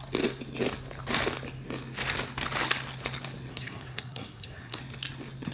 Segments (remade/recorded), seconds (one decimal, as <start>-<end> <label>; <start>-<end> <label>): 0.0-3.5 recorded; 3.5-4.8 remade; 4.8-5.5 recorded